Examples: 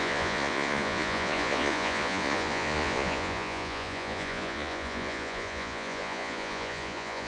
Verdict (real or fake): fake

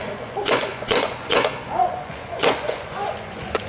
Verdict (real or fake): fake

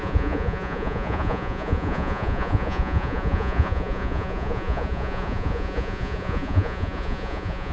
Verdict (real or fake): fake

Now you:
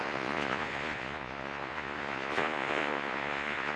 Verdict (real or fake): fake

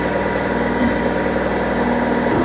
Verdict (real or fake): real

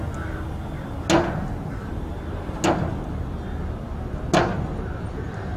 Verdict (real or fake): real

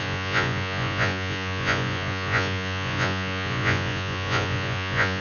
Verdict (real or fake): fake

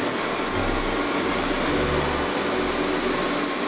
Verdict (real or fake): real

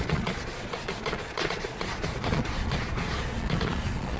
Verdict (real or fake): fake